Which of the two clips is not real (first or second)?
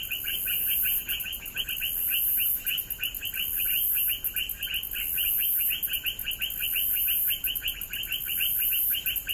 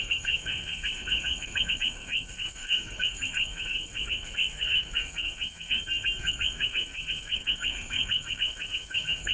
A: second